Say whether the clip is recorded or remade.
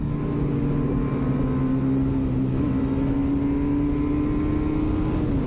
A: recorded